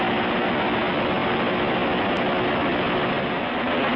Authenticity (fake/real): real